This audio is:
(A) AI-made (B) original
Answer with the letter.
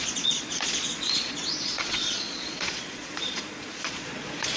A